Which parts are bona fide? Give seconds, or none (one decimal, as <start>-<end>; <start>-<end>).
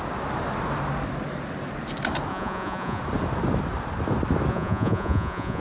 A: 0.0-2.3; 3.0-4.5